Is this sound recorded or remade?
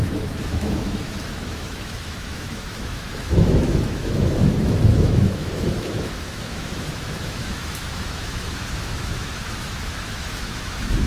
remade